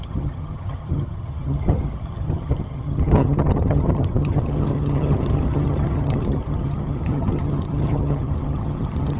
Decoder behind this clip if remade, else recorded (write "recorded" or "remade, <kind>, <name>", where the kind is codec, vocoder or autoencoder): remade, vocoder, HiFi-GAN